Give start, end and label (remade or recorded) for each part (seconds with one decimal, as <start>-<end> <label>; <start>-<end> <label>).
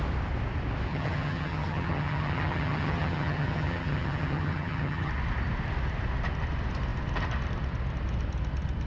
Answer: 0.0-0.9 recorded; 0.9-5.1 remade; 5.1-8.9 recorded